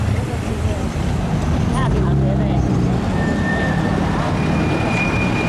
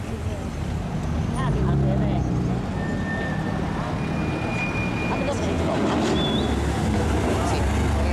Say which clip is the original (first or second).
second